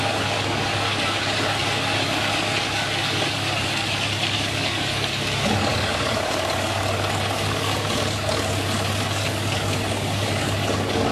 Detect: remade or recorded remade